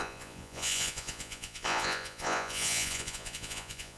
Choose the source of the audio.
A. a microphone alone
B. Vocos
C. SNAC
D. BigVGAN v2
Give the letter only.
B